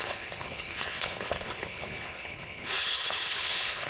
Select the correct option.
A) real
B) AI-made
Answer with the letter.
B